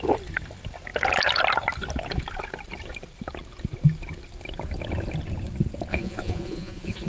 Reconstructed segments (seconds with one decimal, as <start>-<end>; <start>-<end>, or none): 5.9-7.1